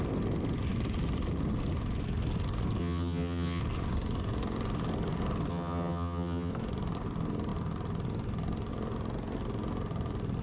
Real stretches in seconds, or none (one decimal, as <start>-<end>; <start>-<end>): 0.0-2.8; 3.6-5.5; 6.5-10.4